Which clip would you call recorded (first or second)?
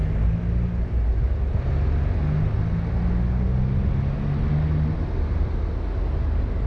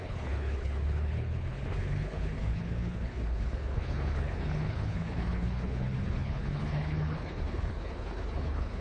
first